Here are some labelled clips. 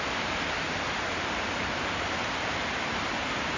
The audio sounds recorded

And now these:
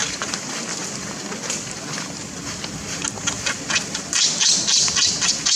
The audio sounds recorded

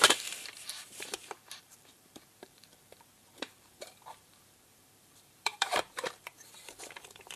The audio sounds remade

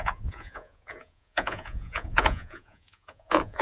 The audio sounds remade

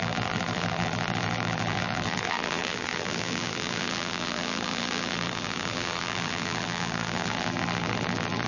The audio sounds remade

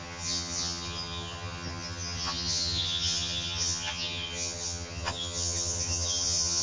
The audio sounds remade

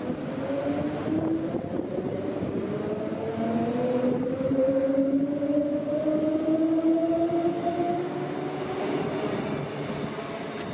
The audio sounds recorded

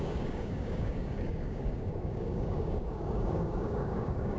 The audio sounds remade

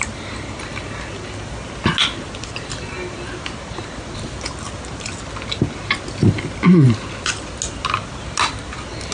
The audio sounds recorded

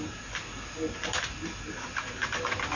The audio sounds recorded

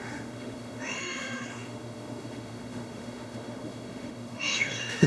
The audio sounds remade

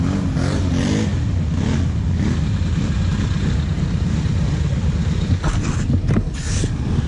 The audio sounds recorded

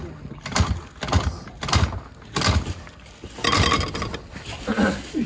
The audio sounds recorded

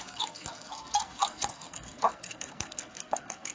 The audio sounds remade